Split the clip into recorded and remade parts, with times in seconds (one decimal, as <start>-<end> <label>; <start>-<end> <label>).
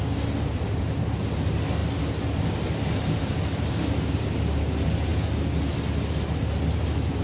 0.0-7.2 recorded